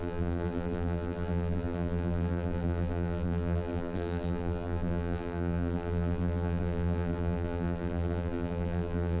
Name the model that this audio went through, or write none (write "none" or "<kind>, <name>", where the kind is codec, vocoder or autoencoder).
vocoder, BigVGAN v2